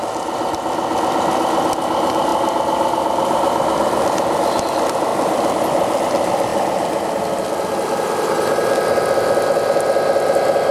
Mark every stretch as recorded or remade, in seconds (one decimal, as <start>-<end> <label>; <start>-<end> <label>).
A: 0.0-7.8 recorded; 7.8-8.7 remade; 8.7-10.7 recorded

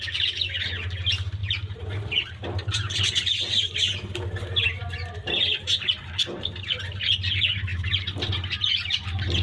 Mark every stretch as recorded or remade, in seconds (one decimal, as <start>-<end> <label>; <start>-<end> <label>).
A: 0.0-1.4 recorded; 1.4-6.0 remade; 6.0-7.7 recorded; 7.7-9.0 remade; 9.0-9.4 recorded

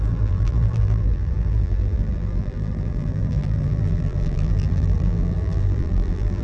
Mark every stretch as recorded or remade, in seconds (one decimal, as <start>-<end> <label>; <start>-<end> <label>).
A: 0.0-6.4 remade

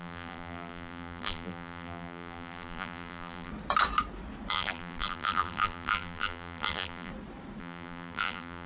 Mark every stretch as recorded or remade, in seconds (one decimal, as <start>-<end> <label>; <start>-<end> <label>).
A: 0.0-3.5 remade; 3.5-4.5 recorded; 4.5-7.1 remade; 7.1-7.6 recorded; 7.6-8.7 remade